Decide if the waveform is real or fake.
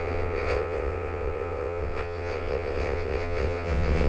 fake